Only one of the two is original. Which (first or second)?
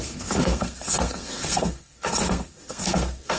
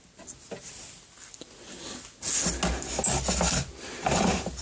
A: second